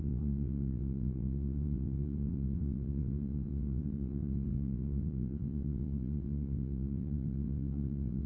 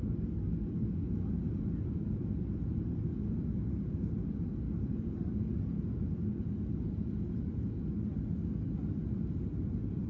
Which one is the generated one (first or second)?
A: first